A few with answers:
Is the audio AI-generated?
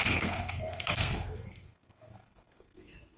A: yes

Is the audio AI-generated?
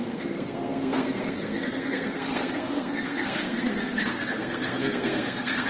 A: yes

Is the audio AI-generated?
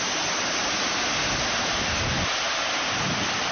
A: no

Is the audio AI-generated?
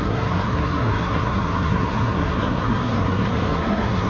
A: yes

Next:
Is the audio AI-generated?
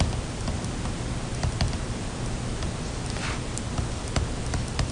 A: no